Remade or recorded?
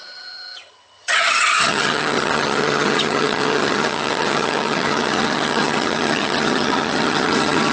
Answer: remade